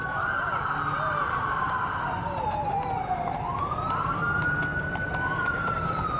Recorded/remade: recorded